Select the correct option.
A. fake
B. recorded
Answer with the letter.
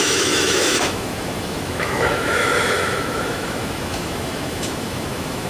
A